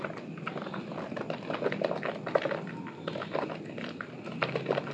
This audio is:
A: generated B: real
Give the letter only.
B